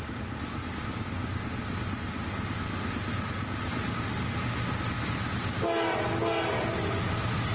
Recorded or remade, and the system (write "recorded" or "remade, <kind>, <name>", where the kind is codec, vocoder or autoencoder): recorded